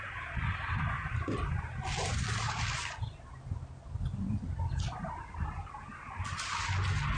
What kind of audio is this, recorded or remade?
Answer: recorded